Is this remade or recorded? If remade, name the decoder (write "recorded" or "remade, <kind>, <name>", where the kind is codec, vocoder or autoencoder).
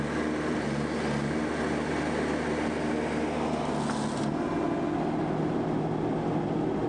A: recorded